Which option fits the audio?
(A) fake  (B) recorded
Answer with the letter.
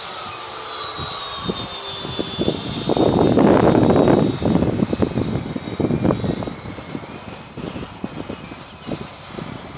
B